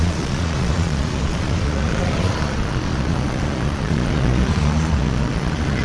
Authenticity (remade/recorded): remade